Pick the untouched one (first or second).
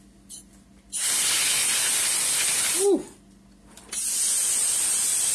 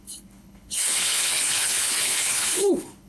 first